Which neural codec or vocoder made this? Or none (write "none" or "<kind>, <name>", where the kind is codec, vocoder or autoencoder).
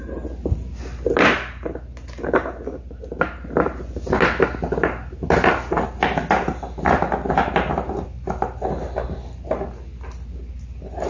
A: none